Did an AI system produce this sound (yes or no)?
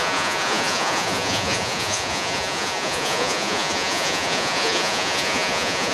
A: yes